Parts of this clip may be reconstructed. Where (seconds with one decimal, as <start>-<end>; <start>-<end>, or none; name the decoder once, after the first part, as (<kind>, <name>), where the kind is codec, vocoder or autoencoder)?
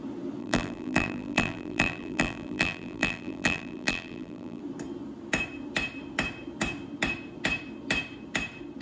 0.4-4.6 (vocoder, BigVGAN v2)